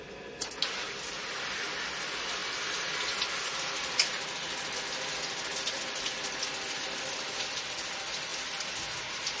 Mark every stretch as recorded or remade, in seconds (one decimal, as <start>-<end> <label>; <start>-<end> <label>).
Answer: 0.0-9.4 recorded